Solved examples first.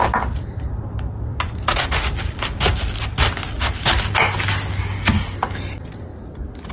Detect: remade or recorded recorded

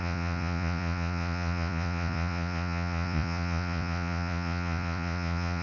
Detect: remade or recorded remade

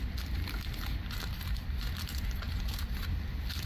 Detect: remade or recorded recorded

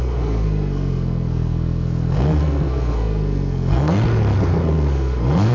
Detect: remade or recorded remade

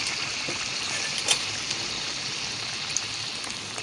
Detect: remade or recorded recorded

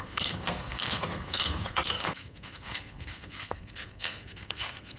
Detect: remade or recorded remade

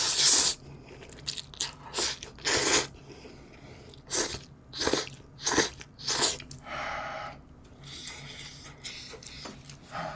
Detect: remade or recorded recorded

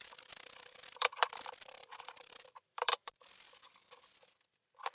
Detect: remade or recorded remade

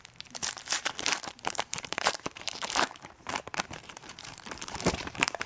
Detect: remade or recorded remade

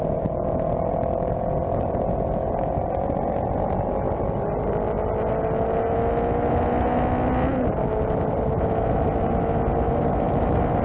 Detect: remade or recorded recorded